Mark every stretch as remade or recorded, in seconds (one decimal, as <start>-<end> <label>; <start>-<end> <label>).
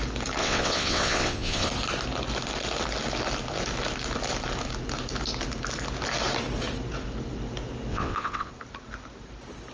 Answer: 0.0-0.4 recorded; 0.4-1.7 remade; 1.7-7.9 recorded; 7.9-8.5 remade; 8.5-9.7 recorded